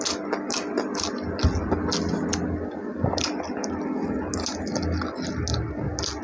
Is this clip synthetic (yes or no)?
no